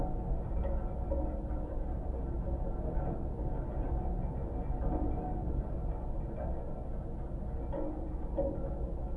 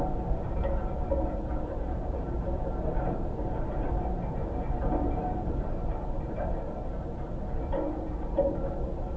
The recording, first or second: first